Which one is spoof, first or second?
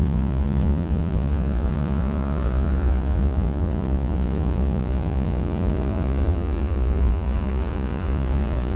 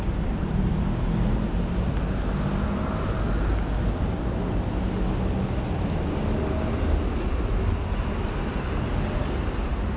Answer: first